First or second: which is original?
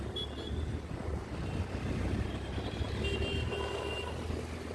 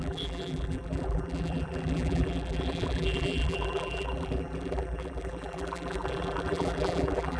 first